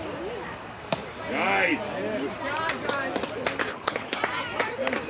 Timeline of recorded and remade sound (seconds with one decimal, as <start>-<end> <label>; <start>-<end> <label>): 0.0-3.7 recorded; 3.7-4.2 remade; 4.2-5.1 recorded